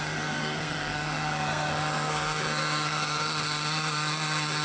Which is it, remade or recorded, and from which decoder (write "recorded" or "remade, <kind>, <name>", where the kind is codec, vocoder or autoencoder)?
remade, codec, SNAC